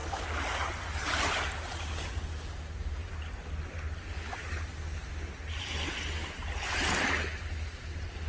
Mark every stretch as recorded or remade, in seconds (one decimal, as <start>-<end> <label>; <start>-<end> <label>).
0.0-1.2 remade; 1.2-8.3 recorded